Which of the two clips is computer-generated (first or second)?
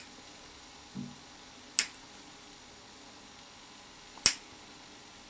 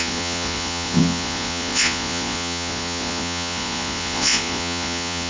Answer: second